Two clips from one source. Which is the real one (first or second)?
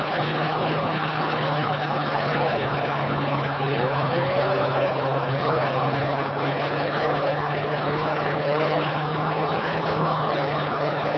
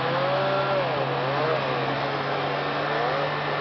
second